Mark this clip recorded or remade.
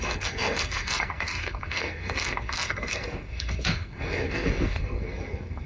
remade